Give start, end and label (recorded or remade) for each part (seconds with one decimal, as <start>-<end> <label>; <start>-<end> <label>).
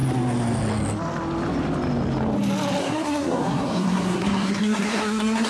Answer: 0.0-2.8 recorded; 2.8-5.5 remade